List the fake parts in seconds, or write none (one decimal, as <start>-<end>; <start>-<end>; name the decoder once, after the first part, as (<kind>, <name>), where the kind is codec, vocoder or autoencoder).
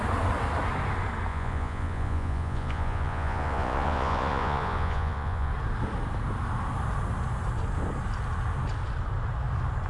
1.3-5.5 (vocoder, Vocos)